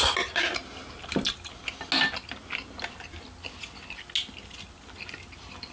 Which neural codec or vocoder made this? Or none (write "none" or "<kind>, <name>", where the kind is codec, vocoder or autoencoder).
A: none